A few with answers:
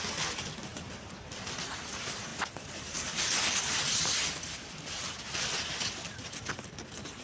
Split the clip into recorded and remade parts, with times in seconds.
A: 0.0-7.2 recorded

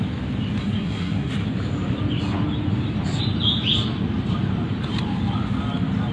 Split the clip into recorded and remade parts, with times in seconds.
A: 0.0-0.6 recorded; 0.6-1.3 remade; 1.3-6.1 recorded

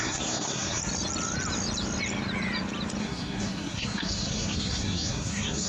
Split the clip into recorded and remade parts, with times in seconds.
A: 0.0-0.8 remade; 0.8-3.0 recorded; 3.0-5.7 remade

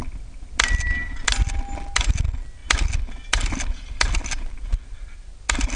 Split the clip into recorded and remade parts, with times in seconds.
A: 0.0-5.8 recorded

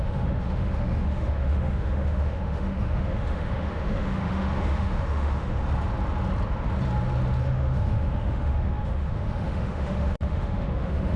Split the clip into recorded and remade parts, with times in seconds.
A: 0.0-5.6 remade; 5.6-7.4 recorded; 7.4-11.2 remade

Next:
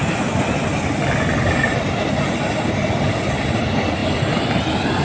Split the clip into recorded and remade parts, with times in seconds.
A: 0.0-5.0 recorded

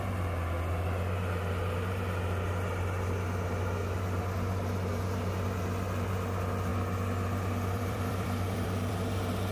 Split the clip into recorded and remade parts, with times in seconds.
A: 0.0-6.7 recorded; 6.7-8.9 remade; 8.9-9.5 recorded